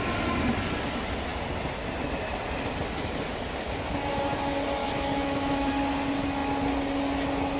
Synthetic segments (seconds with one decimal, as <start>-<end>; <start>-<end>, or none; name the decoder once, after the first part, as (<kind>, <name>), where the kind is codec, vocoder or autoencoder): 4.8-5.7 (autoencoder, DAC-VAE)